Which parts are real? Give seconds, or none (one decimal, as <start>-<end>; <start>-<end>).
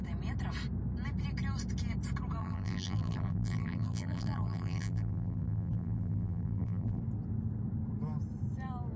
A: 0.0-2.4; 7.0-9.0